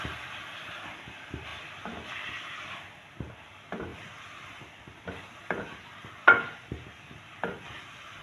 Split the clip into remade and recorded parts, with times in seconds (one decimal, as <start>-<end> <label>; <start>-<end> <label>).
0.0-8.2 recorded